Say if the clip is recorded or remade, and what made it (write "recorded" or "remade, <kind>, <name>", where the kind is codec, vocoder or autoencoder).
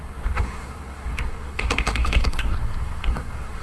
remade, codec, SNAC